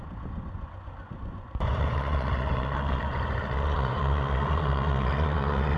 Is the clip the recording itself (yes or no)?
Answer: no